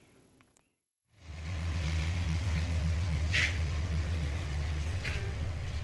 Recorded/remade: remade